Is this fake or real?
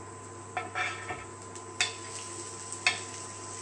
real